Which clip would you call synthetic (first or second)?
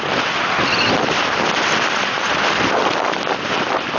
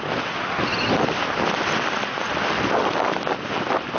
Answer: first